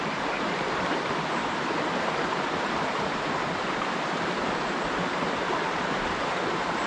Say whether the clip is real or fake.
fake